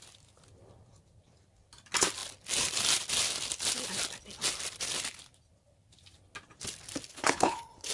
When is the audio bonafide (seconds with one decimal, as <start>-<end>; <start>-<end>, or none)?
0.0-7.1